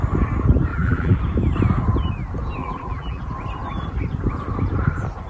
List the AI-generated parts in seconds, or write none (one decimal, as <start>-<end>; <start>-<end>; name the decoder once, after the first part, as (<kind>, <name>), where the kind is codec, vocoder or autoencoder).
0.7-1.2 (vocoder, BigVGAN v2); 2.6-3.2